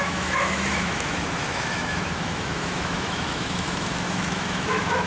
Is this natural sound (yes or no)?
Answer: no